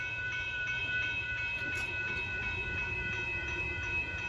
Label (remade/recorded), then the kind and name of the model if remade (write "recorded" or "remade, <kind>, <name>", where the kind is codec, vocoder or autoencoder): remade, vocoder, BigVGAN v2